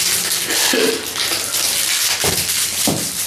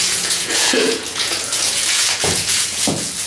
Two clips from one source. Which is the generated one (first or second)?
second